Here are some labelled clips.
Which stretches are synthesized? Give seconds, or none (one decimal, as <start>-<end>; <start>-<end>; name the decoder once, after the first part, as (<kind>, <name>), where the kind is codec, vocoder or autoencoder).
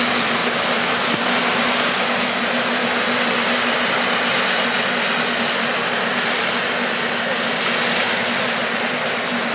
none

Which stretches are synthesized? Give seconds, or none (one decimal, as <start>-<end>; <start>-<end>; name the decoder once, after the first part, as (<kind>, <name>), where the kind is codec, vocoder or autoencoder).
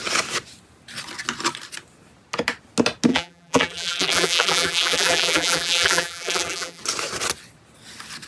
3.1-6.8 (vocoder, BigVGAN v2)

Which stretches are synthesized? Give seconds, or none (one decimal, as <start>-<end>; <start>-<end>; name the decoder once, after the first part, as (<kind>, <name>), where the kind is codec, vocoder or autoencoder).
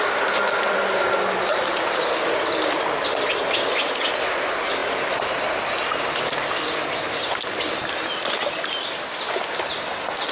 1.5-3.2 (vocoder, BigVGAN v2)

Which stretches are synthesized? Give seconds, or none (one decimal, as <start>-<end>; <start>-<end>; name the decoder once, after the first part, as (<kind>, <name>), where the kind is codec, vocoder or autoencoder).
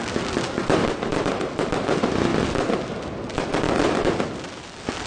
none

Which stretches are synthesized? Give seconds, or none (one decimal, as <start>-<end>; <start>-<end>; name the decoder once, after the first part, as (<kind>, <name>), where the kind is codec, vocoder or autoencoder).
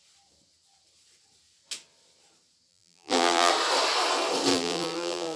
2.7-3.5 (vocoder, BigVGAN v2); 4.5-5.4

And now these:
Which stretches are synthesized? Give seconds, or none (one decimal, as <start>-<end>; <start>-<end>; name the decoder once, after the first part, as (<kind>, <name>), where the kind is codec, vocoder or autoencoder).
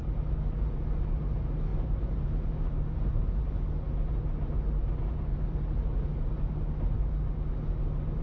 1.7-3.7 (vocoder, BigVGAN v2); 5.3-6.7